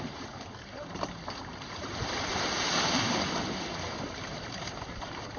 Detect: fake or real fake